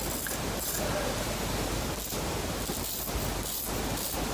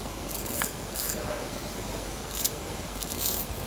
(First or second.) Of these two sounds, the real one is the first